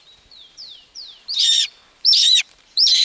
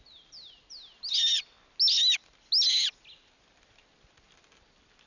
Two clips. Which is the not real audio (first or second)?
first